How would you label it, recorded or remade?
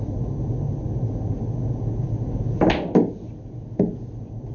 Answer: recorded